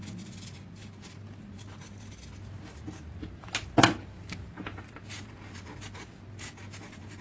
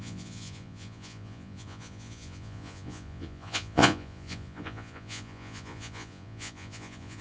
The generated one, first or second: second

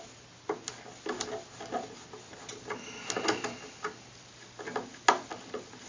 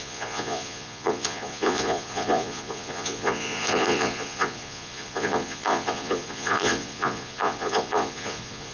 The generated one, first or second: second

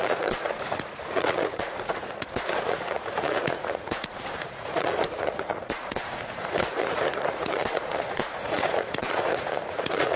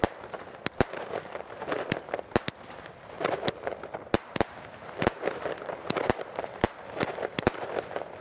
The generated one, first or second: first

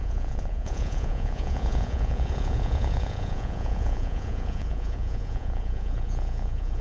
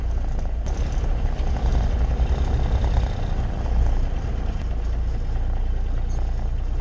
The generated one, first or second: first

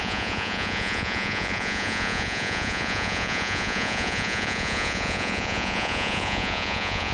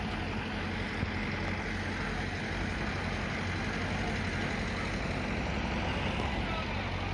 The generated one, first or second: first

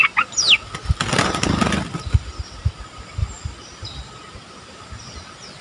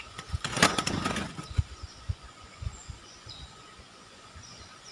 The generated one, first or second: second